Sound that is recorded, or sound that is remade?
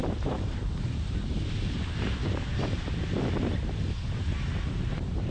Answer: remade